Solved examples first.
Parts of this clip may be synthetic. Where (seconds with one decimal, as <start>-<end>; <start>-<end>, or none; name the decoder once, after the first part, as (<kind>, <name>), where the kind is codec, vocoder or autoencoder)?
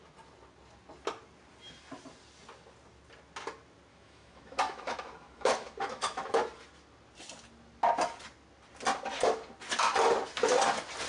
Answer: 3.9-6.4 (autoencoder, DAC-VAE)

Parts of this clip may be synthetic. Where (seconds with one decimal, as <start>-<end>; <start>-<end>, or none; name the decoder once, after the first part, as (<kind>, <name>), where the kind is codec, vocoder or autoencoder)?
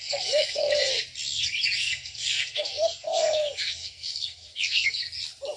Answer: 0.0-0.9 (codec, SNAC); 1.8-5.0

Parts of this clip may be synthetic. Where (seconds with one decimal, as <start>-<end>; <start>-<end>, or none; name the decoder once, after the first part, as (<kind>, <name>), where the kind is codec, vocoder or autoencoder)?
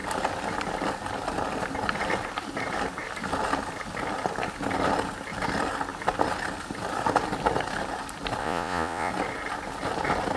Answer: 8.4-9.1 (vocoder, Vocos)